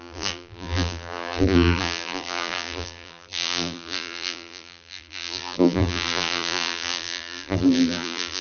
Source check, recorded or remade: remade